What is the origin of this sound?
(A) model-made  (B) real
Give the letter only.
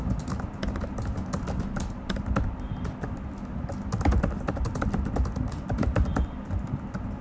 B